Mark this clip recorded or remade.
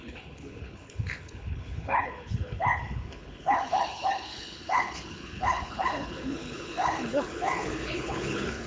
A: remade